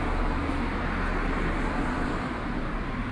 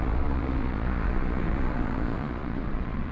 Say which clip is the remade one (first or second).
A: second